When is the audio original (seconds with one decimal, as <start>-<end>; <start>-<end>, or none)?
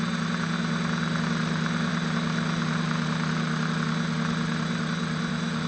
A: 0.0-5.7